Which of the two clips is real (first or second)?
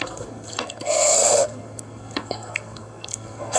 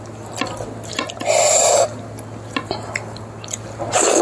second